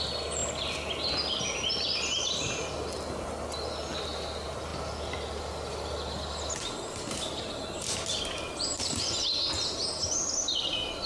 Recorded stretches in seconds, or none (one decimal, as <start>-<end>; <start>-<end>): 0.0-11.1